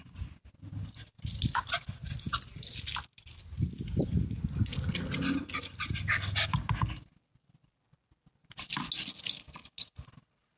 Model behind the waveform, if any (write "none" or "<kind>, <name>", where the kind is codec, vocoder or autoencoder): none